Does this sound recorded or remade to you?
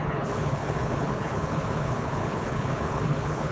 remade